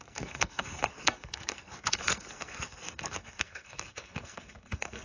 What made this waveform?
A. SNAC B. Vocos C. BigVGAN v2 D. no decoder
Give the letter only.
A